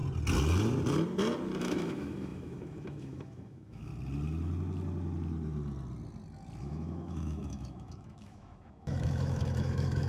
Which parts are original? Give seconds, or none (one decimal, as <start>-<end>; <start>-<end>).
0.0-1.6; 3.9-6.6